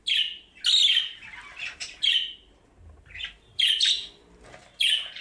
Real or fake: real